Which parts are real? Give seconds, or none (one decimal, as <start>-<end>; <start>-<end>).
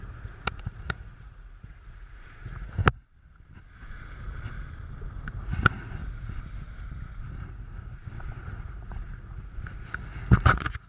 2.8-5.3; 6.0-7.4